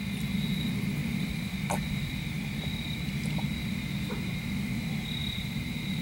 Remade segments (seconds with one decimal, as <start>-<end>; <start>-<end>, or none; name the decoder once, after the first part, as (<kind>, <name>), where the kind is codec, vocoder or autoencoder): 1.0-2.4 (vocoder, BigVGAN v2); 5.2-6.0